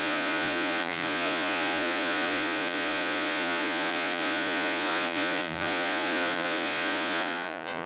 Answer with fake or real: fake